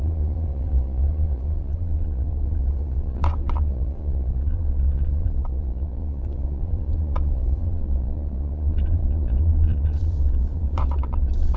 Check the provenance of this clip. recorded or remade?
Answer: remade